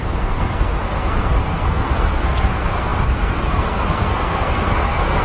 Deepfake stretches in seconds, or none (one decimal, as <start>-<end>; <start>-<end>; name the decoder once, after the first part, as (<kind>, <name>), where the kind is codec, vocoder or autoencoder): 0.0-5.2 (codec, SNAC)